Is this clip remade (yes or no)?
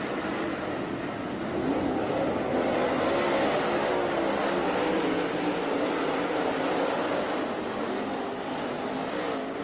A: no